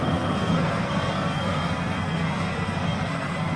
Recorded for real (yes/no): no